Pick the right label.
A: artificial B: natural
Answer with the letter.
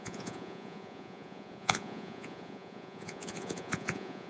A